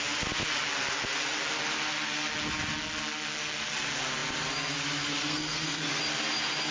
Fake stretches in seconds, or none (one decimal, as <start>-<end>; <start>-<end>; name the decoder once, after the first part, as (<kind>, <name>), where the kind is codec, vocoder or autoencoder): 5.2-6.0 (codec, SNAC)